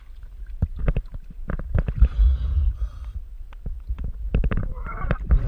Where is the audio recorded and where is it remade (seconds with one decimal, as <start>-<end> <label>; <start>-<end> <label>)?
0.0-2.2 recorded; 2.2-2.7 remade; 2.7-5.5 recorded